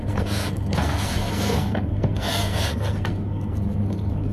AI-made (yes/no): yes